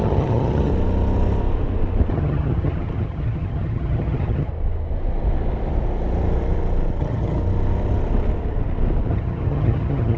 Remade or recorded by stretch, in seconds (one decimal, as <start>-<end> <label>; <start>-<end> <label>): 0.0-0.7 remade; 0.7-2.1 recorded; 2.1-4.5 remade; 4.5-7.0 recorded; 7.0-7.4 remade; 7.4-9.1 recorded; 9.1-10.2 remade

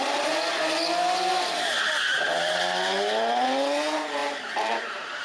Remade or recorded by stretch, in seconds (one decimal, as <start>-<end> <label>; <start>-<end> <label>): 0.0-2.1 recorded; 2.1-2.6 remade; 2.6-4.2 recorded; 4.2-5.2 remade